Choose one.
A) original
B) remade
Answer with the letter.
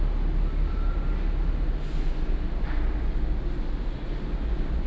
A